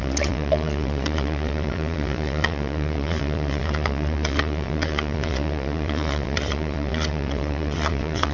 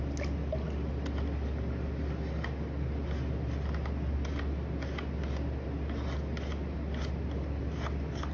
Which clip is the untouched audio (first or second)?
second